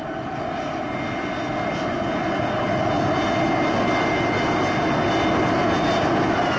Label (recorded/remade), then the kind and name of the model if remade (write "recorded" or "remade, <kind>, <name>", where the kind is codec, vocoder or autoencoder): recorded